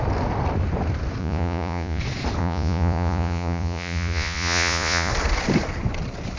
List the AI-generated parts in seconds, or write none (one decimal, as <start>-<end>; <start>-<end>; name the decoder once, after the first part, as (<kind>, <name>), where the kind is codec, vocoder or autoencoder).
1.2-2.0 (vocoder, Vocos); 2.4-5.1